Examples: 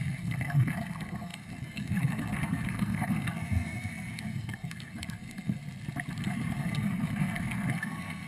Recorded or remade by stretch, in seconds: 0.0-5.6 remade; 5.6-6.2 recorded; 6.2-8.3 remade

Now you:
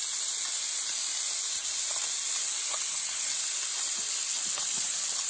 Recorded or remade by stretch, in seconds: 0.0-2.9 recorded; 2.9-3.4 remade; 3.4-4.3 recorded; 4.3-5.3 remade

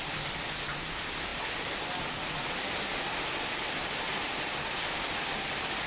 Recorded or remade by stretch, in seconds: 0.0-5.9 recorded